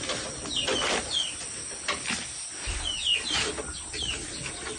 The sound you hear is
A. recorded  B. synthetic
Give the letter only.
A